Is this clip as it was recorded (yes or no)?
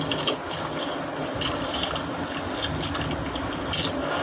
yes